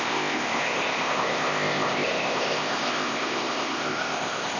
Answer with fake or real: fake